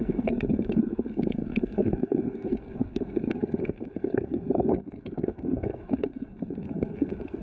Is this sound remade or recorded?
remade